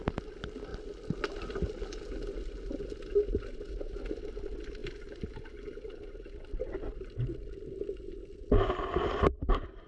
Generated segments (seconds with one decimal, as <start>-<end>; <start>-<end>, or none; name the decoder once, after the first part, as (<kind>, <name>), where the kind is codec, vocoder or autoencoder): none